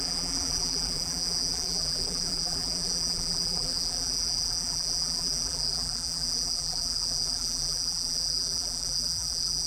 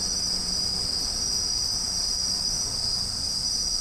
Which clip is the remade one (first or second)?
first